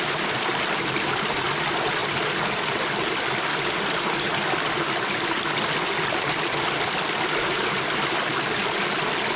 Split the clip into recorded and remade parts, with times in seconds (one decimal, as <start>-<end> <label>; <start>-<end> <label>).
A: 0.0-9.4 recorded